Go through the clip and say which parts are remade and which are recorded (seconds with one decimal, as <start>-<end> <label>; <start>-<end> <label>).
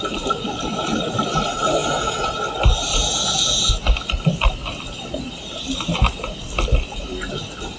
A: 0.0-1.8 recorded; 1.8-2.4 remade; 2.4-2.9 recorded; 2.9-3.7 remade; 3.7-7.8 recorded